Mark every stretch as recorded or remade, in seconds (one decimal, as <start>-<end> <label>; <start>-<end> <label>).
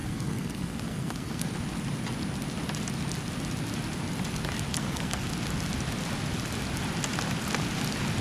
0.0-1.5 remade; 1.5-4.7 recorded; 4.7-5.3 remade; 5.3-8.2 recorded